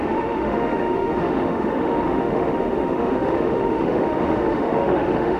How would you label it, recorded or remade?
remade